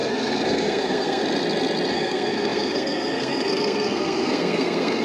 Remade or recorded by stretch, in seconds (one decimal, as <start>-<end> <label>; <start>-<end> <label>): 0.0-1.2 remade; 1.2-1.9 recorded; 1.9-5.0 remade